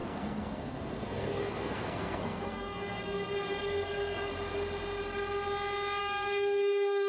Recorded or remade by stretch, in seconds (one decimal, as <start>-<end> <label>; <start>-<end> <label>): 0.0-4.3 remade; 4.3-6.0 recorded; 6.0-7.1 remade